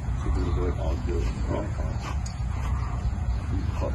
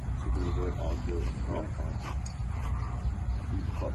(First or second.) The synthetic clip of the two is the first